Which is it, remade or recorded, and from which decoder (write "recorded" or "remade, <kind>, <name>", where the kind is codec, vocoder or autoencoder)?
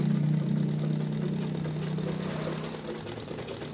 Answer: recorded